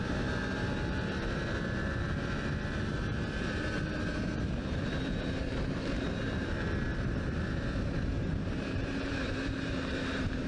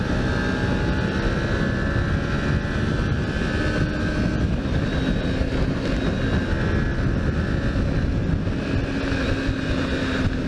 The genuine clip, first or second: second